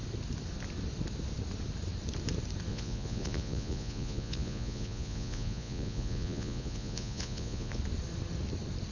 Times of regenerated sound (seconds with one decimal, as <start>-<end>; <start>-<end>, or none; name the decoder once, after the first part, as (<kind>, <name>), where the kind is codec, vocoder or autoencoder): 2.7-7.8 (vocoder, Vocos)